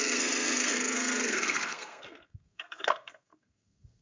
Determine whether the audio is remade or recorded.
remade